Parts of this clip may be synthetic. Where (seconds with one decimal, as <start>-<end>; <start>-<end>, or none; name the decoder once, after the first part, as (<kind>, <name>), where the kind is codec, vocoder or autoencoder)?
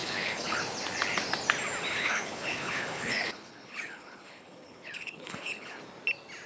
0.0-0.6 (codec, HILCodec); 1.9-5.8